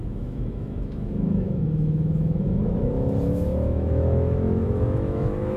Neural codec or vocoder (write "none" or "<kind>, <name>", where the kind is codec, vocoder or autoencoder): autoencoder, DAC-VAE